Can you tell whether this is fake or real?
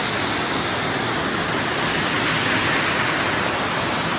real